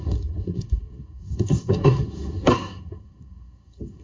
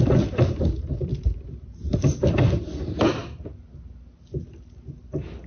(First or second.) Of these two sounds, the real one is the second